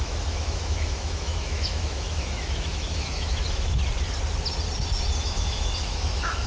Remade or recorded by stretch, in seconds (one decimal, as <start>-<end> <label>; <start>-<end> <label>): 0.0-3.8 remade; 3.8-5.2 recorded; 5.2-6.5 remade